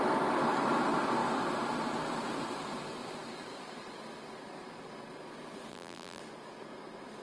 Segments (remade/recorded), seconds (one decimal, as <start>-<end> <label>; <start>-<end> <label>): 0.0-5.7 recorded; 5.7-6.2 remade; 6.2-7.2 recorded